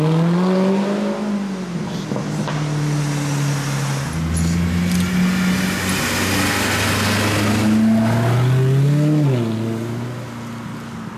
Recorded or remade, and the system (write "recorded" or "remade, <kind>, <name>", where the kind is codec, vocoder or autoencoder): recorded